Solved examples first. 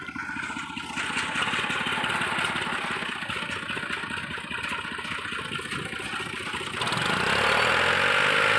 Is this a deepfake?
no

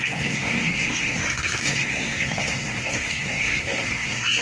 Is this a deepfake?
yes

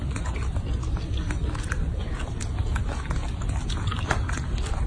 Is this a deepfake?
no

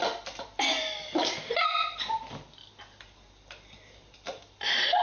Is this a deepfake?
no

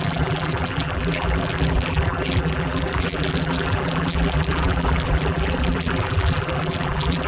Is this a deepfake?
yes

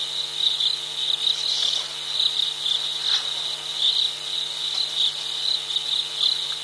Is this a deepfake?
no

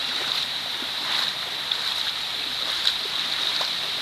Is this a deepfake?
yes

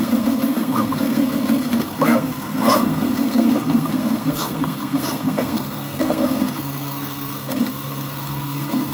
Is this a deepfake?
yes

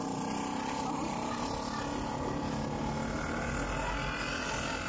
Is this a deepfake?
no